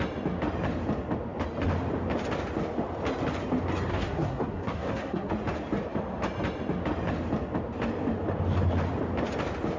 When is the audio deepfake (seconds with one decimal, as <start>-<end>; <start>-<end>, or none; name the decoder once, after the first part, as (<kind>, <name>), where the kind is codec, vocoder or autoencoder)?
3.9-5.3 (codec, SNAC)